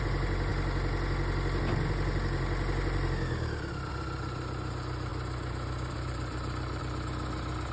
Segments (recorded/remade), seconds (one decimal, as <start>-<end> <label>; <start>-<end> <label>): 0.0-5.1 recorded; 5.1-6.8 remade; 6.8-7.7 recorded